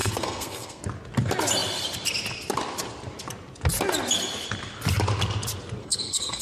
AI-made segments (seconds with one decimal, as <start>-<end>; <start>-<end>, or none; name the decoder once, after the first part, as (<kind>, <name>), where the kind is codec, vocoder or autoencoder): 0.0-0.8 (codec, SNAC); 5.8-6.4